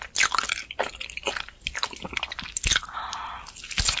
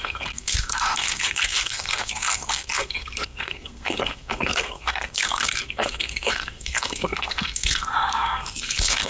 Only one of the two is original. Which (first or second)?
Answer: first